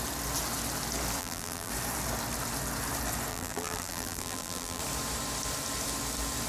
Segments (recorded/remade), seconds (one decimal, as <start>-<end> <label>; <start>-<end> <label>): 0.0-1.2 recorded; 1.2-1.7 remade; 1.7-3.3 recorded; 3.3-4.8 remade; 4.8-6.5 recorded